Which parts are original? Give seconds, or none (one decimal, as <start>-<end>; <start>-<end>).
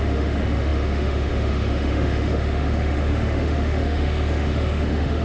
none